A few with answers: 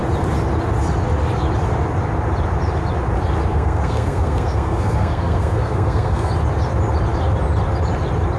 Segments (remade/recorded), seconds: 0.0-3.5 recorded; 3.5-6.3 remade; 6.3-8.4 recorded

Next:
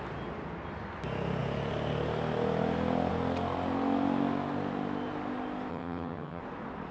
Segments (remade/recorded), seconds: 0.0-5.7 recorded; 5.7-6.4 remade; 6.4-6.9 recorded

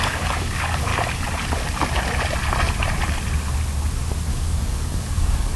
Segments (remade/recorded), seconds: 0.0-0.9 remade; 0.9-4.3 recorded; 4.3-5.6 remade

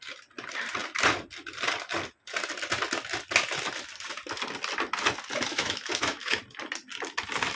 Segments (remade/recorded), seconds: 0.0-5.5 recorded; 5.5-6.4 remade; 6.4-7.6 recorded

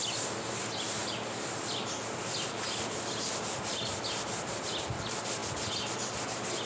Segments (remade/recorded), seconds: 0.0-1.0 recorded; 1.0-2.3 remade; 2.3-6.7 recorded

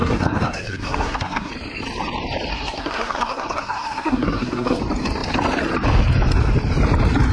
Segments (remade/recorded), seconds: 0.0-1.5 remade; 1.5-2.5 recorded; 2.5-4.8 remade; 4.8-7.3 recorded

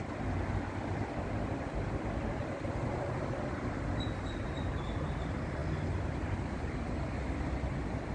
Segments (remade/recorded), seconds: 0.0-8.1 recorded

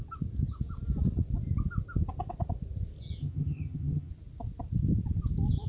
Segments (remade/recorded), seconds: 0.0-3.2 recorded; 3.2-4.1 remade; 4.1-5.7 recorded